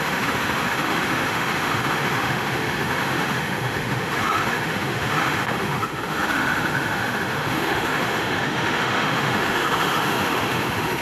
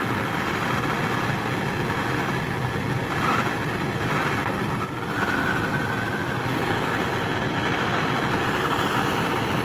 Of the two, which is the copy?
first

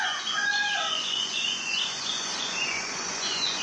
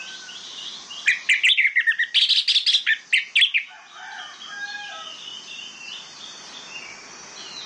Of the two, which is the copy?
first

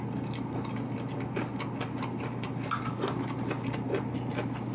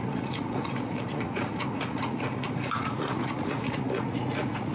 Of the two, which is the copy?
second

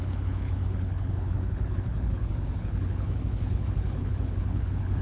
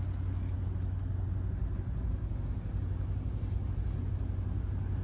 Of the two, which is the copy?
first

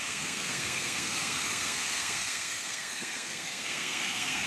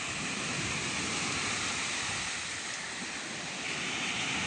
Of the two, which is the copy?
first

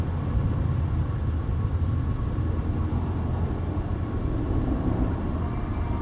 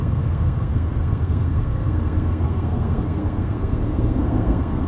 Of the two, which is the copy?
second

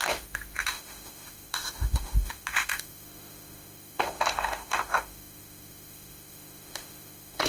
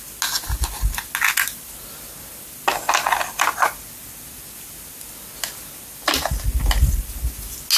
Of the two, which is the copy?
first